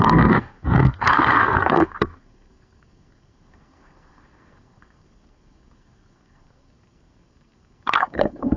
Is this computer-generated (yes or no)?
yes